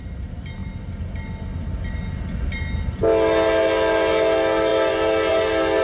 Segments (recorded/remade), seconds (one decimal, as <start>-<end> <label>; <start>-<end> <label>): 0.0-5.8 recorded